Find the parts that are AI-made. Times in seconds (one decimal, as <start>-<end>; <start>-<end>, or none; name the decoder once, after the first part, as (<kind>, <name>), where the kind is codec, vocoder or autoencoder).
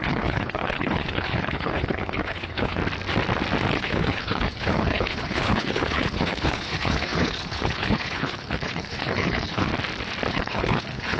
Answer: 0.0-2.8 (codec, HILCodec); 3.7-9.7; 10.3-11.2